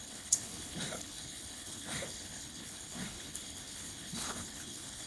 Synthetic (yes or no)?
yes